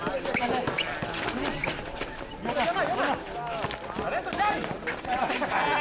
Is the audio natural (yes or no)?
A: yes